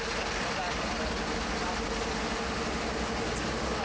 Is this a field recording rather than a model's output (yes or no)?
yes